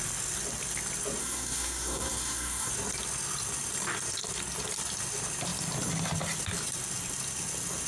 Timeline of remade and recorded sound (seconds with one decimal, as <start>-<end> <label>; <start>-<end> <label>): 0.0-1.2 recorded; 1.2-2.7 remade; 2.7-7.9 recorded